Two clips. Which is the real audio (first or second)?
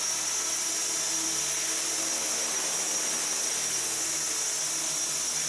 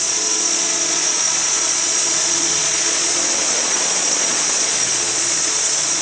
first